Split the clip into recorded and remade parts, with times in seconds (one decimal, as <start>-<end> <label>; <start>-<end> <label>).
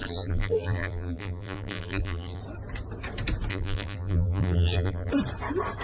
0.0-2.4 remade; 2.4-3.5 recorded; 3.5-5.1 remade; 5.1-5.8 recorded